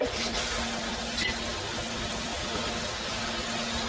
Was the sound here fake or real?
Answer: real